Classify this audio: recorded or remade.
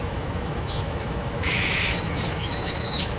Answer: remade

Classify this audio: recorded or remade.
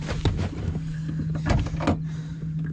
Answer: recorded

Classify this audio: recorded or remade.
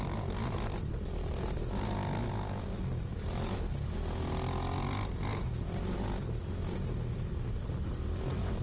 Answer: recorded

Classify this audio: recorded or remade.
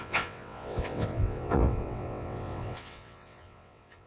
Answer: remade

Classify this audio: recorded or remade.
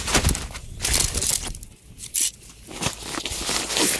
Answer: recorded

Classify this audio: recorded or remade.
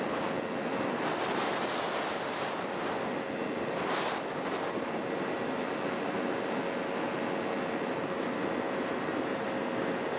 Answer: recorded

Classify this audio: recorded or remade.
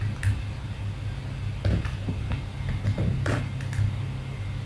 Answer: recorded